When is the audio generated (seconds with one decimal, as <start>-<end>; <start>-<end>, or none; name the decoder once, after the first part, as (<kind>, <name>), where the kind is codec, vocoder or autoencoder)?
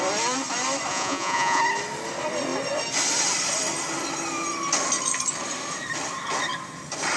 0.9-1.6 (vocoder, Vocos)